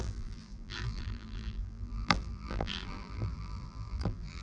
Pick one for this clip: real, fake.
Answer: fake